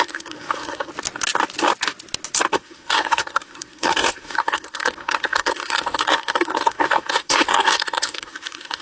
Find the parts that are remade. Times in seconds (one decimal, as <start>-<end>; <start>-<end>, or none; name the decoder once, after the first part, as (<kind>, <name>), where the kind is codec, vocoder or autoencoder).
0.0-0.9 (codec, SNAC); 2.5-8.8